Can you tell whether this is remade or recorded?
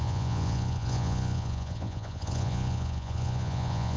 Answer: remade